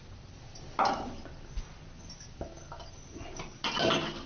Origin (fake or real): real